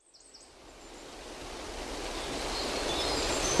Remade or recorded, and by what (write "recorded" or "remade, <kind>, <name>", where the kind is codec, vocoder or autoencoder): recorded